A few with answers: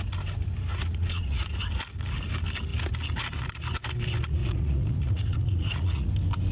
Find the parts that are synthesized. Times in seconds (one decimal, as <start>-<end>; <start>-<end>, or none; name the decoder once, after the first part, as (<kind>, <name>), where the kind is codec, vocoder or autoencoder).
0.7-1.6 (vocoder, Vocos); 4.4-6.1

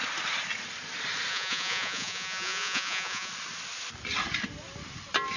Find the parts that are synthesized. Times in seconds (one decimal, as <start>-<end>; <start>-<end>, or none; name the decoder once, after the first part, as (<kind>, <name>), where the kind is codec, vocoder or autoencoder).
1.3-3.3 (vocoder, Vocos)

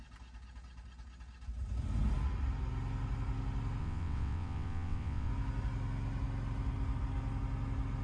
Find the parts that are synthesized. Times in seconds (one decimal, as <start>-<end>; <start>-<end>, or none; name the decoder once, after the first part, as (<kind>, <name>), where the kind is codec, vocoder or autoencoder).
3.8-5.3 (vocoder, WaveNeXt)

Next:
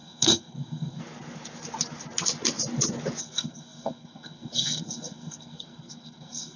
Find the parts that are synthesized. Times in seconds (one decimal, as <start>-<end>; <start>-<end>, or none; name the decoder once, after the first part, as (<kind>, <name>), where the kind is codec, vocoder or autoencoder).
0.0-1.0 (codec, SNAC); 3.2-6.6

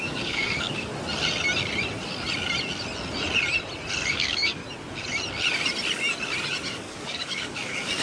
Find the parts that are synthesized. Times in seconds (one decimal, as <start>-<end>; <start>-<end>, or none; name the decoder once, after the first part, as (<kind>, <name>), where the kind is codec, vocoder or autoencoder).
0.0-0.9 (codec, DAC); 4.1-4.6; 6.7-8.0

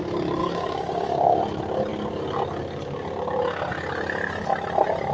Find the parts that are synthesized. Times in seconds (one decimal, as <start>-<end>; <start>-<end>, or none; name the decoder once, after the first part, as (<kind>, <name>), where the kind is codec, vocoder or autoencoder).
0.4-1.4 (codec, DAC)

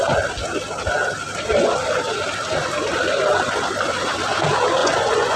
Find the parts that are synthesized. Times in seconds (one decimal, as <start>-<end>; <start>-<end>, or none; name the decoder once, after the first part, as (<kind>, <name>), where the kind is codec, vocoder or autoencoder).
4.8-5.4 (vocoder, Vocos)